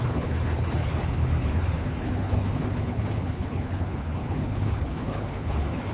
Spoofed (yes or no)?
yes